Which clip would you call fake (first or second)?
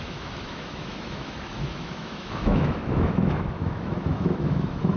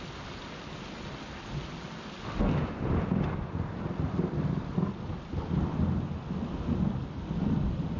first